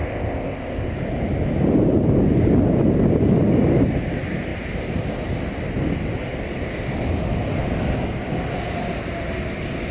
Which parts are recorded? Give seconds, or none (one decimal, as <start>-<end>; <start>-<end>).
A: 0.9-9.9